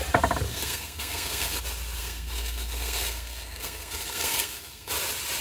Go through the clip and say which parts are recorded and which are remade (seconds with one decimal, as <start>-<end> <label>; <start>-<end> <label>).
0.0-0.5 recorded; 0.5-1.6 remade; 1.6-2.0 recorded; 2.0-4.9 remade; 4.9-5.4 recorded